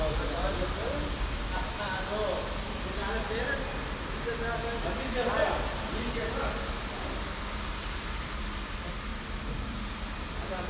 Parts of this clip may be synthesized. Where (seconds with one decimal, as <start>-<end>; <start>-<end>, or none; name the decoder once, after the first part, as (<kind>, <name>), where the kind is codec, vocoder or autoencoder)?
none